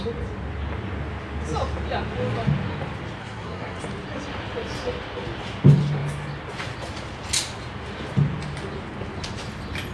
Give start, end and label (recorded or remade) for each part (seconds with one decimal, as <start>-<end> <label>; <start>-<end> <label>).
0.0-3.2 recorded; 3.2-3.8 remade; 3.8-9.9 recorded